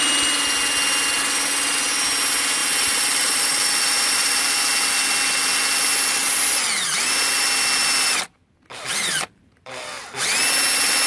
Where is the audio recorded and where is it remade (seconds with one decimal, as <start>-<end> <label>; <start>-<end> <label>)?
0.0-2.6 recorded; 2.6-4.4 remade; 4.4-8.9 recorded; 8.9-9.7 remade; 9.7-11.1 recorded